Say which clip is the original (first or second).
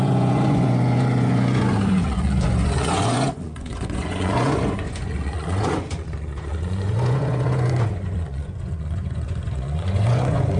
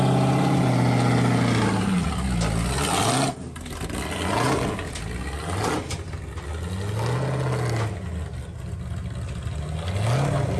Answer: second